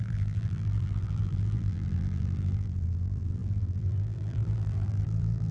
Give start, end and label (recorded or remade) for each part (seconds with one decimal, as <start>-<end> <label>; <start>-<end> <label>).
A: 0.0-5.5 remade